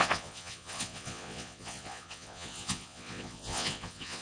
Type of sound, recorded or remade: remade